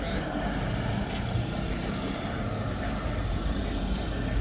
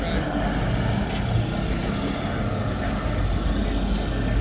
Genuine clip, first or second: second